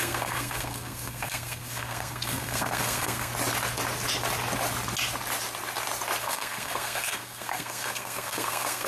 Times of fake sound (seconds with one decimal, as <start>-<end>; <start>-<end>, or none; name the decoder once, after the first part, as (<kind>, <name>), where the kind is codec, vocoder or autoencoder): 0.0-3.3 (codec, SNAC); 6.2-8.9